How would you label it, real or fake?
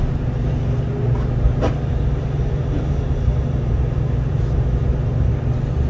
real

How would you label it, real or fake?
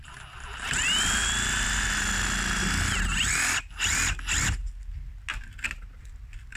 real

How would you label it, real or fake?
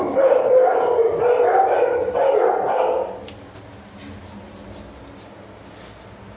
real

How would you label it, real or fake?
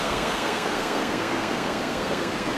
fake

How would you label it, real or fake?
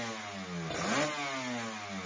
real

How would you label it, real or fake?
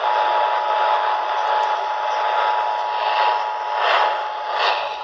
real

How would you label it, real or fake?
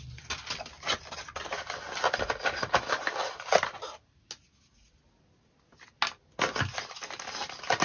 real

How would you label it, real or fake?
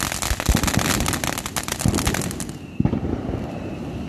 real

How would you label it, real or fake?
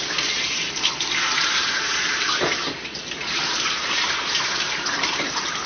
fake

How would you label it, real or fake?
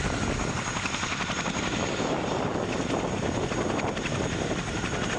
real